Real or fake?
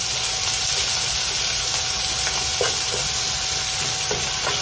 real